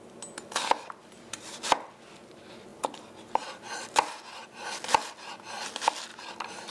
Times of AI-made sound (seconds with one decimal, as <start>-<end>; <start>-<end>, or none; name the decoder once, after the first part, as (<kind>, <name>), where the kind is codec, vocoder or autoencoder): 1.0-2.0 (vocoder, BigVGAN v2); 6.1-6.7